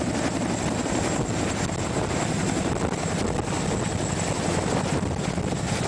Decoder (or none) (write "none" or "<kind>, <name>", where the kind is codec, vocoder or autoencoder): none